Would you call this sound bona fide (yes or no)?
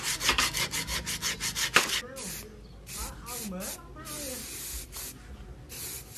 yes